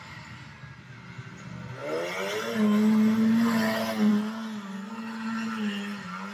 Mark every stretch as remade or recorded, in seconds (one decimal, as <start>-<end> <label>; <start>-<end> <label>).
0.0-6.3 recorded